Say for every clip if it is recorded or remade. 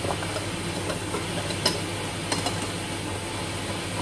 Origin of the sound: recorded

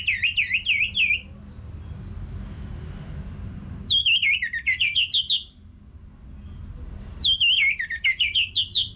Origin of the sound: recorded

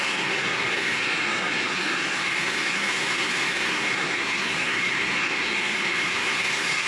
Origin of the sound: remade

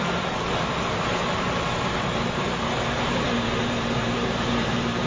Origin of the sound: remade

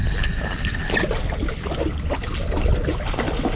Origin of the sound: recorded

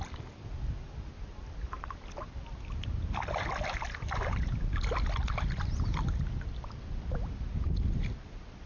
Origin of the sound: recorded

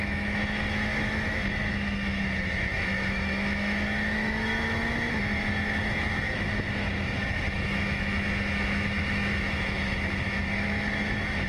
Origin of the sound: remade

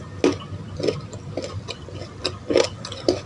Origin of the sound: recorded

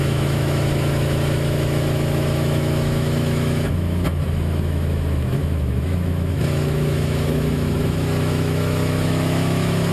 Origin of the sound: remade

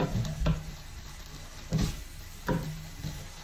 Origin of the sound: recorded